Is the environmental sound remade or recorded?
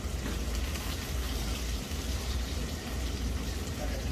remade